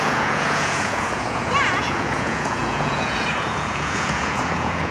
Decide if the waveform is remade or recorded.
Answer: remade